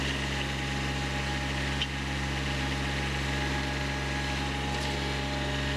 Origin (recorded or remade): recorded